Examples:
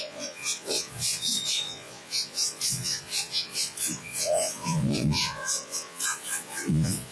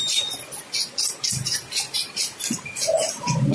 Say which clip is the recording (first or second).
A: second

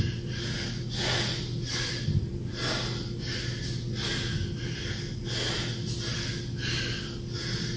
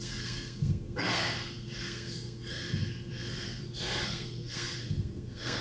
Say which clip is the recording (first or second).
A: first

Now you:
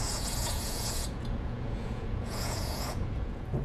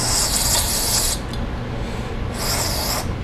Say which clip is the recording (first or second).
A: second